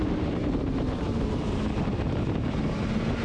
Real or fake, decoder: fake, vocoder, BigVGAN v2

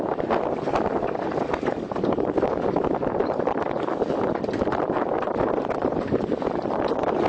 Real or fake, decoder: real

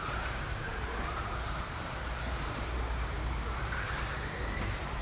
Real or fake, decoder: fake, vocoder, BigVGAN v2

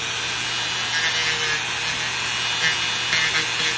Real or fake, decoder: real